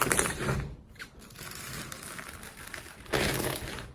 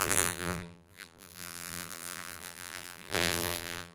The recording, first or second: first